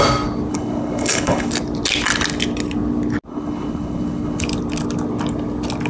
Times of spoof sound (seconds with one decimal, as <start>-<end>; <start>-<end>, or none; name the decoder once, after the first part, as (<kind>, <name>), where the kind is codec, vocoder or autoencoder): 0.5-1.5 (codec, HILCodec); 3.3-4.4